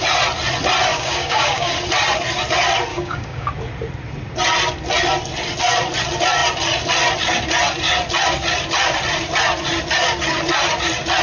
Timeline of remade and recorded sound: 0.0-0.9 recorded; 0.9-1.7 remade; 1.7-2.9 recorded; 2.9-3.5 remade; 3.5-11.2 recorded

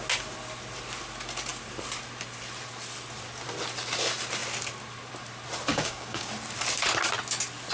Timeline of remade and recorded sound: 0.0-5.7 recorded; 5.7-6.3 remade; 6.3-7.7 recorded

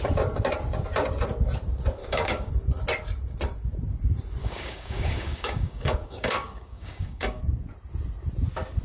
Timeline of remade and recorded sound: 0.0-2.0 recorded; 2.0-2.5 remade; 2.5-4.4 recorded; 4.4-7.4 remade; 7.4-8.8 recorded